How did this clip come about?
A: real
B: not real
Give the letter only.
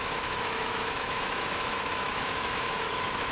B